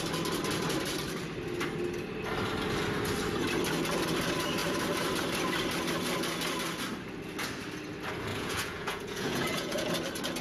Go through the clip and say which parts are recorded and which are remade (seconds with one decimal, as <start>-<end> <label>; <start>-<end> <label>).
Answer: 0.0-8.3 recorded; 8.3-9.9 remade; 9.9-10.4 recorded